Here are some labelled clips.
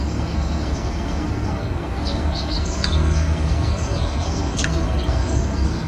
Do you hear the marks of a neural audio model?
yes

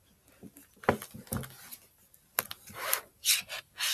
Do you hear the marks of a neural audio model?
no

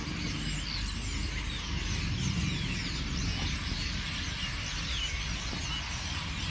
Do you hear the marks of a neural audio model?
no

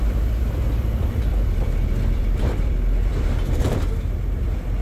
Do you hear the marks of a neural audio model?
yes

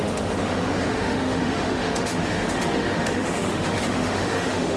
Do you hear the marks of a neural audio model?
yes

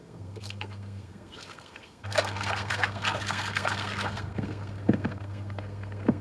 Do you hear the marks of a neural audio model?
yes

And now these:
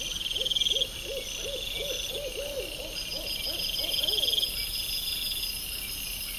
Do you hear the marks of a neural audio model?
no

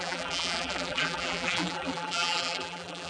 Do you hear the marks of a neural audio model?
yes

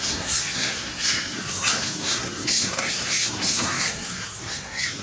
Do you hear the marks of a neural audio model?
yes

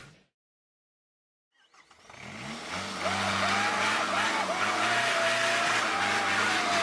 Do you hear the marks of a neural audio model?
no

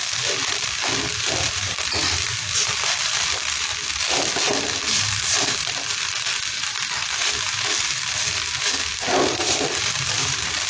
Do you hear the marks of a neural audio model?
yes